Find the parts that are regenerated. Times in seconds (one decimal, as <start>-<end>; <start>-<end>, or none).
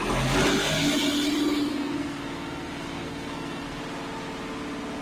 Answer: 1.7-3.8